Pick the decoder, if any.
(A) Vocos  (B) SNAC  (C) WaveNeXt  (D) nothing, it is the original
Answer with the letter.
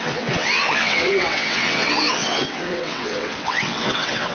C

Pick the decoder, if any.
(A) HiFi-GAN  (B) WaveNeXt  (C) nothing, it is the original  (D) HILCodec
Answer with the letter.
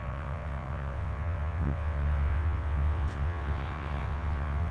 B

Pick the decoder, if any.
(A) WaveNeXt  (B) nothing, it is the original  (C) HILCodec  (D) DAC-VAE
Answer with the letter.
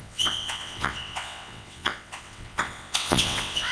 A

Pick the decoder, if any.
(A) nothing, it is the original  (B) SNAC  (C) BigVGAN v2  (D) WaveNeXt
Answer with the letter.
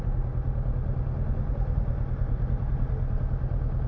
A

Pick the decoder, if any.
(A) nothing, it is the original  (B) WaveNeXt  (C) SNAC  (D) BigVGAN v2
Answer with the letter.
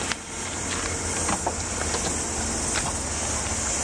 A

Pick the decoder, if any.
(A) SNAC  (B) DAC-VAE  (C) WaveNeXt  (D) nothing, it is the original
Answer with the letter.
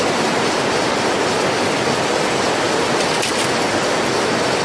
D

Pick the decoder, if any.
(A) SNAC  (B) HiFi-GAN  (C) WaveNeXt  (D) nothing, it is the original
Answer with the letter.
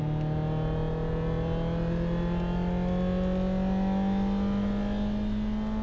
D